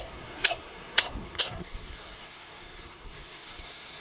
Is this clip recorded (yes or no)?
no